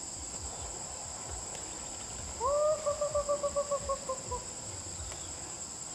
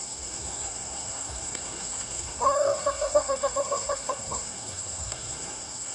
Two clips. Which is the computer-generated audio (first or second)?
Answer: second